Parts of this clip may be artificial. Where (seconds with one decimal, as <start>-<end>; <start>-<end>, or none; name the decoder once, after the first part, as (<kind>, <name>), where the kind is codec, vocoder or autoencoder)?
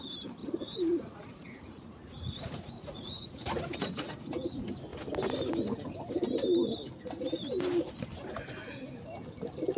0.4-4.1 (vocoder, Vocos)